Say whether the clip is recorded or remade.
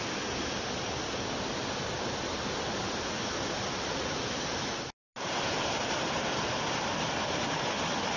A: recorded